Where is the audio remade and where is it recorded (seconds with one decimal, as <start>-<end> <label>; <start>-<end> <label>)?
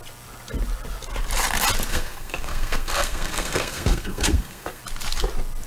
0.0-1.9 recorded; 1.9-4.8 remade; 4.8-5.7 recorded